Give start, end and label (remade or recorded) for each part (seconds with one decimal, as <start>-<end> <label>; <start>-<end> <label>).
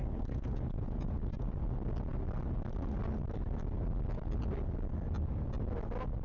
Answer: 0.0-1.6 remade; 1.6-6.2 recorded